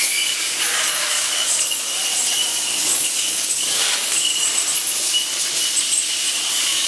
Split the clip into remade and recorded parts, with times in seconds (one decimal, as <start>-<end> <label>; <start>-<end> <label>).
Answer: 0.0-2.0 remade; 2.0-2.7 recorded; 2.7-4.3 remade; 4.3-6.5 recorded; 6.5-6.9 remade